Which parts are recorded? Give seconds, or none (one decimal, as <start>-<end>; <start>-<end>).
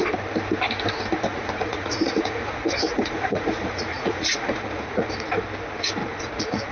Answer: 0.0-1.3; 5.3-6.0